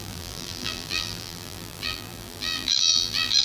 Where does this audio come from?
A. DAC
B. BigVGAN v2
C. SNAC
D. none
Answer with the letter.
B